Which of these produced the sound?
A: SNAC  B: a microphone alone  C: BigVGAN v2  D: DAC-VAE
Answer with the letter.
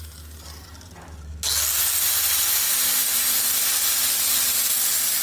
B